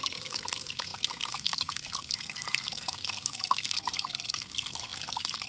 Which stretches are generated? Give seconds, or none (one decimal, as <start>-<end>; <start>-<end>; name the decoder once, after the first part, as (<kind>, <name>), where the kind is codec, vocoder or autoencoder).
0.0-5.5 (codec, SNAC)